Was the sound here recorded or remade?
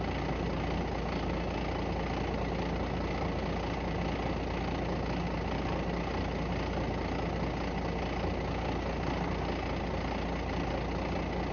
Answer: recorded